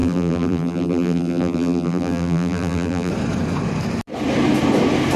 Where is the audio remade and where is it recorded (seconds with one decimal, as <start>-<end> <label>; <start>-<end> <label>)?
0.0-3.1 remade; 3.1-5.2 recorded